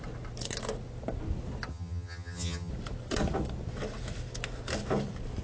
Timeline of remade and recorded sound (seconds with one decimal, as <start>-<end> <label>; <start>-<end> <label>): 0.0-1.7 recorded; 1.7-2.7 remade; 2.7-5.4 recorded